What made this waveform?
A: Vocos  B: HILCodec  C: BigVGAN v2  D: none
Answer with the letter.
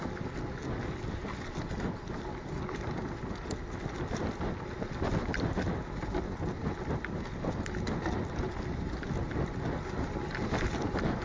D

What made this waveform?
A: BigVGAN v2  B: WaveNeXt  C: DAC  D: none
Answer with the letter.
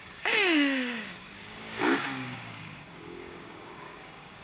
C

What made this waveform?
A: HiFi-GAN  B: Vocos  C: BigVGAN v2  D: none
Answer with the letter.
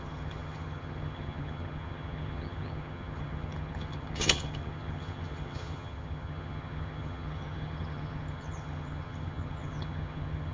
A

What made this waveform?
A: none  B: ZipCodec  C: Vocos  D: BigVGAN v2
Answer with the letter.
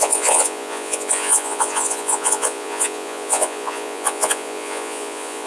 C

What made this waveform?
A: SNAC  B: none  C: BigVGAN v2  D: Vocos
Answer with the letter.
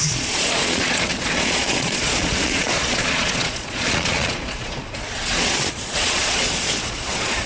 D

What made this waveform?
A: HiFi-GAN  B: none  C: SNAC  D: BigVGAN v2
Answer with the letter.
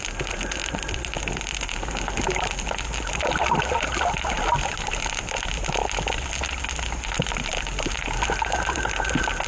B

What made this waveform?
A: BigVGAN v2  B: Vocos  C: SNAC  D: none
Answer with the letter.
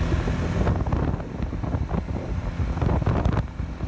D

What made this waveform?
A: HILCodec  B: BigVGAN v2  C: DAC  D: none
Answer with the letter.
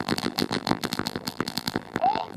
B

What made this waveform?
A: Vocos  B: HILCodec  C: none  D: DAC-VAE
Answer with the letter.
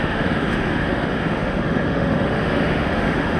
D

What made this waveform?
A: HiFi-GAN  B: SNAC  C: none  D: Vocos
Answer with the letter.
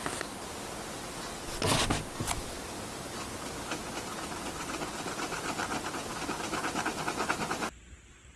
C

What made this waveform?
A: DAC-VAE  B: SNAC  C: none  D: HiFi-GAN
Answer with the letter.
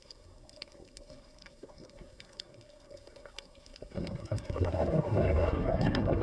B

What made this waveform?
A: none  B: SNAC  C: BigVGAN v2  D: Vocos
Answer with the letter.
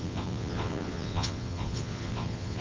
D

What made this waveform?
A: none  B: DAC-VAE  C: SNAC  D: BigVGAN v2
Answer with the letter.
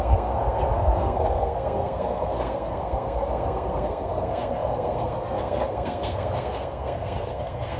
C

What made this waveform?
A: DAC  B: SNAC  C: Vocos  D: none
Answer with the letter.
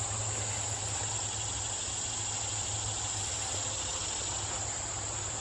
D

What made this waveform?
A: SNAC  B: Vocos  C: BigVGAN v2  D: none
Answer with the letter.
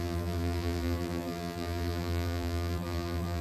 C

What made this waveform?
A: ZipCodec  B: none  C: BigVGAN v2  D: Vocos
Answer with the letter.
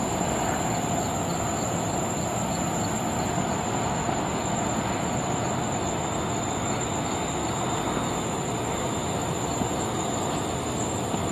B